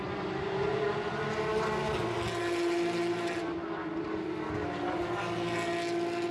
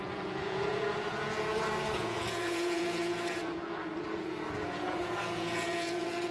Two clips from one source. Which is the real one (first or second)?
first